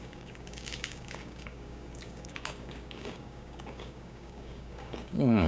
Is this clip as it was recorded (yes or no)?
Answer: no